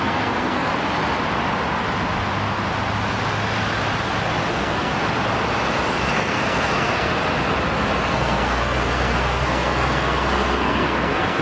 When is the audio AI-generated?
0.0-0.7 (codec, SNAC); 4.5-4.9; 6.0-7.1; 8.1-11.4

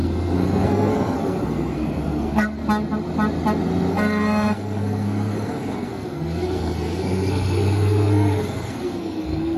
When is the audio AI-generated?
0.0-2.6 (codec, SNAC); 3.9-9.6

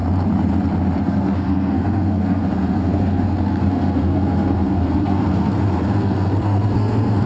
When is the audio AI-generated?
1.0-7.3 (codec, SNAC)

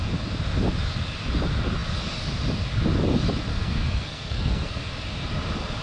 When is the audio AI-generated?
3.5-4.9 (codec, SNAC)